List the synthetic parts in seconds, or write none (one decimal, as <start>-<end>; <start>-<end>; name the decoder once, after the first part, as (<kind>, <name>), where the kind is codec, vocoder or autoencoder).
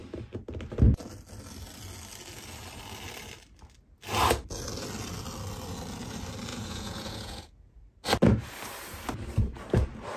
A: 6.5-7.8 (vocoder, Vocos)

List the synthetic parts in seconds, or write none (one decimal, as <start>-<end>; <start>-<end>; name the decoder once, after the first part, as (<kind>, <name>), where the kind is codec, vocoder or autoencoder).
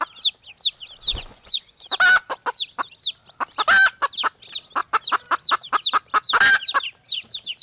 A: 1.1-1.9 (vocoder, Vocos)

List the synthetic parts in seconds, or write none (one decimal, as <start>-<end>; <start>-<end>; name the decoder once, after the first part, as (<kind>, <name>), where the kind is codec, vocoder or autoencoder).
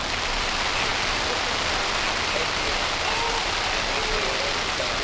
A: none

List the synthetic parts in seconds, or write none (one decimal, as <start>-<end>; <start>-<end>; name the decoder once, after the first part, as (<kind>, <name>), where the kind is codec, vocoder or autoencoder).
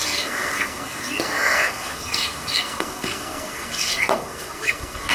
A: 0.0-5.1 (codec, SNAC)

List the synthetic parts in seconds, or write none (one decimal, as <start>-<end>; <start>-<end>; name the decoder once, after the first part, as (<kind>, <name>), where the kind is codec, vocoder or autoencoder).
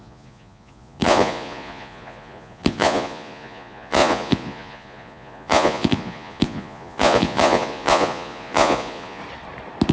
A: 0.0-9.2 (vocoder, Vocos)